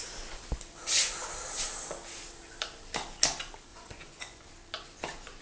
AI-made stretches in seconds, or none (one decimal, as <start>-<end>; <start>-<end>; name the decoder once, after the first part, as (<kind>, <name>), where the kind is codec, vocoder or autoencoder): 3.7-4.4 (vocoder, Vocos)